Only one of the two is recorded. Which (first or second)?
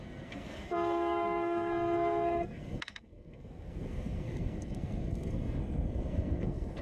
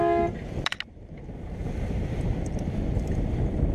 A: second